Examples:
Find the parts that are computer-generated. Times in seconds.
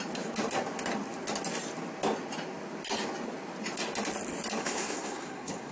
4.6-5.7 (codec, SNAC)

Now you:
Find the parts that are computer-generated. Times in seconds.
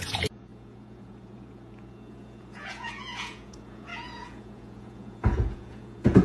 0.0-6.2 (vocoder, Vocos)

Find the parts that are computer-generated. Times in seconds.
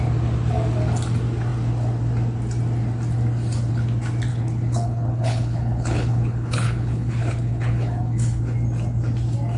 4.3-8.4 (codec, HILCodec)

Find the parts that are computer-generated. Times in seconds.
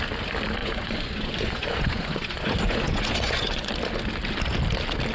0.6-3.7 (vocoder, Vocos)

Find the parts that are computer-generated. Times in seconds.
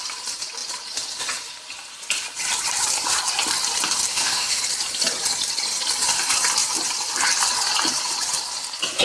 4.1-4.6 (autoencoder, DAC-VAE)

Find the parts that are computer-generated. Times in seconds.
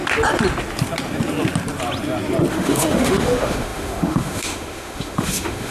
2.5-5.7 (autoencoder, DAC-VAE)